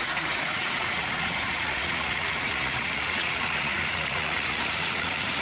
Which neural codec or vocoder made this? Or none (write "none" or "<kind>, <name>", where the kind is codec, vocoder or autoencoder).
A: vocoder, Vocos